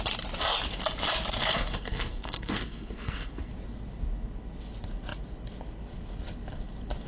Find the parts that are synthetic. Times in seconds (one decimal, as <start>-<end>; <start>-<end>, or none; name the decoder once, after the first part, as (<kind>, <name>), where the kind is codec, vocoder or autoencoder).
1.5-3.5 (codec, SNAC)